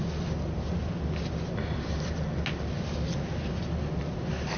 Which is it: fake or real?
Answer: real